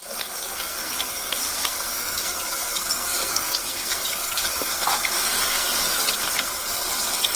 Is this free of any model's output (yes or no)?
no